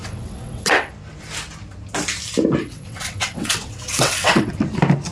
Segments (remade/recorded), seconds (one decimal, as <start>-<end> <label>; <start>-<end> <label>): 0.0-0.9 remade; 0.9-2.6 recorded; 2.6-4.5 remade; 4.5-5.1 recorded